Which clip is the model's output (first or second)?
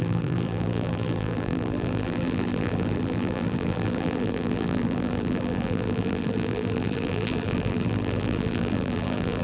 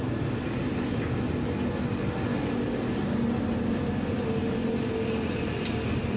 first